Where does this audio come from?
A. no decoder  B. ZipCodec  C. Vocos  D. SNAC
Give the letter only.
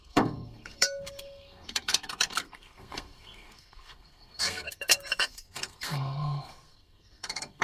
D